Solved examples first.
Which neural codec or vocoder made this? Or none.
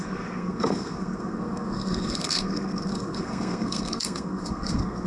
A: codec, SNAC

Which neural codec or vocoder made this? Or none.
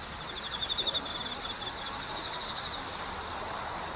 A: none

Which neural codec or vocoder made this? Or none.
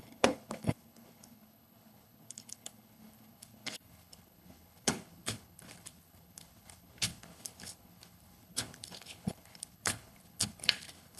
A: codec, HILCodec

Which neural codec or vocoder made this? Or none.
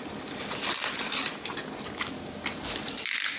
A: none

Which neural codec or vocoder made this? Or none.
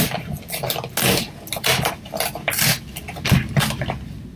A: none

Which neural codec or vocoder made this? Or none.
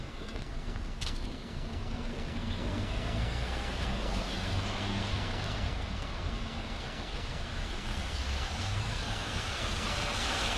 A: codec, SNAC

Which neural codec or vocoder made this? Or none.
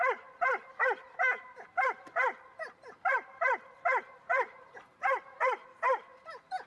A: vocoder, BigVGAN v2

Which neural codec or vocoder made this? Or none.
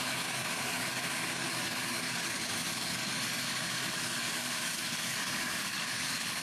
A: codec, DAC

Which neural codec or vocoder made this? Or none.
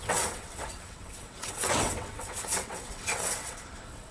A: vocoder, WaveNeXt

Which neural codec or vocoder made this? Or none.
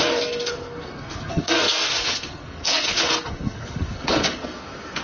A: codec, SNAC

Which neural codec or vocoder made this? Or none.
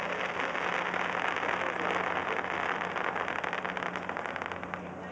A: none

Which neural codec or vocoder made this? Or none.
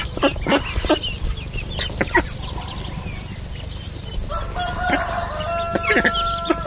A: none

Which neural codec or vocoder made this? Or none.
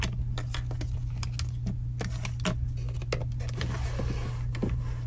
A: none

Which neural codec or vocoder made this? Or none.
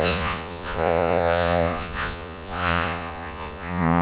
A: vocoder, Vocos